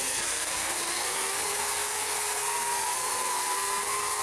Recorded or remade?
remade